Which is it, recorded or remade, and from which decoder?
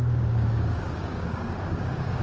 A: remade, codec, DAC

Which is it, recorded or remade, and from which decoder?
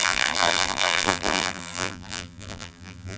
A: remade, vocoder, BigVGAN v2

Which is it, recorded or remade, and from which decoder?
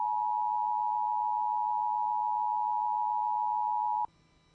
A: recorded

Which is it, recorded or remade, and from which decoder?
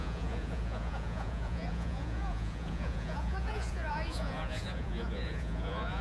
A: remade, vocoder, Vocos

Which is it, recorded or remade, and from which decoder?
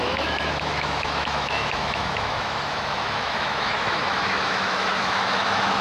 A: remade, autoencoder, DAC-VAE